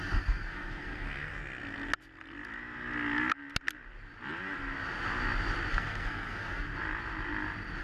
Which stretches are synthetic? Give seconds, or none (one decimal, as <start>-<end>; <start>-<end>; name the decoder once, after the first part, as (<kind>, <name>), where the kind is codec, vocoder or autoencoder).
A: 0.0-1.4 (codec, SNAC); 5.7-6.7